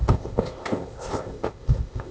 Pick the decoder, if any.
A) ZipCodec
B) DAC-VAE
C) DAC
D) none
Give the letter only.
A